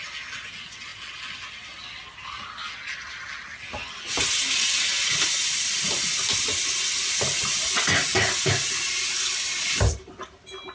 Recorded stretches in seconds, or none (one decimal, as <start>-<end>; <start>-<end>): 0.0-10.7